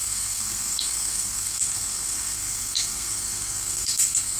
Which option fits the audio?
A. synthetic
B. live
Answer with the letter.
A